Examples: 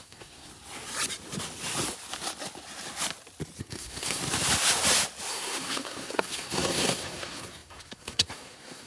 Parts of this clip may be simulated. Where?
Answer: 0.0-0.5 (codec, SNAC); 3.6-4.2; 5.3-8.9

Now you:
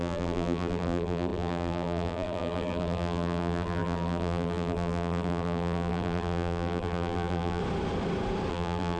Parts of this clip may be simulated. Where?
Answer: 0.0-7.6 (vocoder, BigVGAN v2); 8.5-9.0

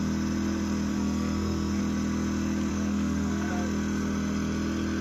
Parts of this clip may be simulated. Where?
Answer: 0.9-1.8 (codec, SNAC); 2.7-3.5

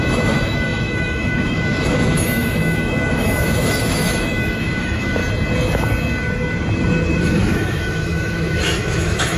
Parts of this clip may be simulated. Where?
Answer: 0.0-5.2 (autoencoder, DAC-VAE); 7.2-9.4